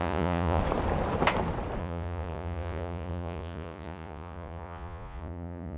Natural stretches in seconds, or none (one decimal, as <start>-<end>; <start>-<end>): 0.6-1.8